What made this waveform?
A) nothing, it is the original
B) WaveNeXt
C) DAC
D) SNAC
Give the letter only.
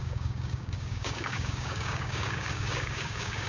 C